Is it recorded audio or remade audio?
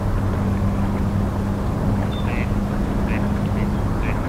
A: recorded